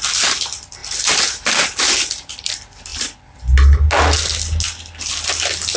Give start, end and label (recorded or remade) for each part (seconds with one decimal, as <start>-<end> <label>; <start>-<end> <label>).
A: 0.0-5.8 recorded